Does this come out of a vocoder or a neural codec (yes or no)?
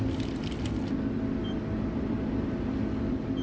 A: no